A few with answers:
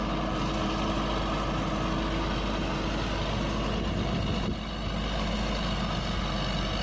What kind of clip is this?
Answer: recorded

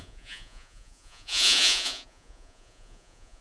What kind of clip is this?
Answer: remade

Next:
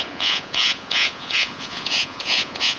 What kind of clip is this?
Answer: remade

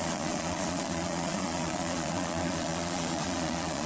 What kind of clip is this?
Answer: remade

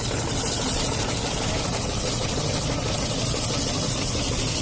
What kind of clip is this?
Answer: recorded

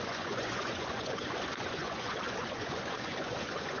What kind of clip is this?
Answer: remade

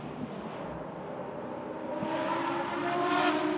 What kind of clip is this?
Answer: recorded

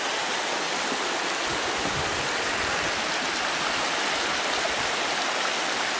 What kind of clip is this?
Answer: recorded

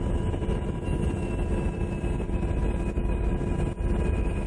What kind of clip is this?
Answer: recorded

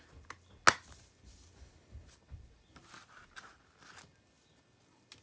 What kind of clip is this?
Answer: recorded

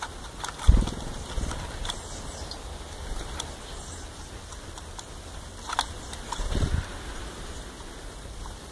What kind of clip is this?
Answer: recorded